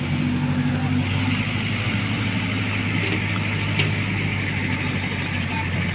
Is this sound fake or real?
real